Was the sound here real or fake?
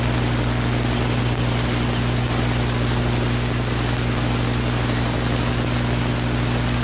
real